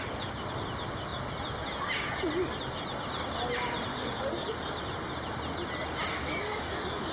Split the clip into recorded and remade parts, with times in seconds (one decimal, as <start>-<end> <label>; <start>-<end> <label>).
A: 0.0-3.9 recorded; 3.9-4.8 remade; 4.8-6.2 recorded; 6.2-7.1 remade